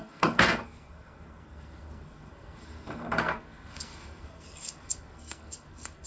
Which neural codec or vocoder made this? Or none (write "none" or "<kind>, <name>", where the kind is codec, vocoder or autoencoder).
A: codec, SNAC